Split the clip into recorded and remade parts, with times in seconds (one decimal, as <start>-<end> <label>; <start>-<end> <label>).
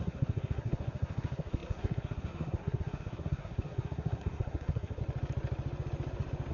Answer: 0.0-5.0 remade; 5.0-6.5 recorded